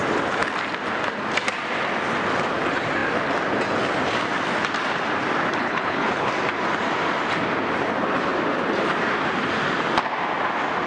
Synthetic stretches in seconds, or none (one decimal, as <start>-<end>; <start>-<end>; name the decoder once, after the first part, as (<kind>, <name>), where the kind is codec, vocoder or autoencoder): 5.6-6.3 (codec, HILCodec)